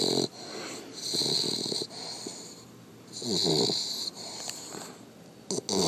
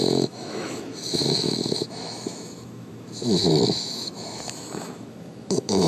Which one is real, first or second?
first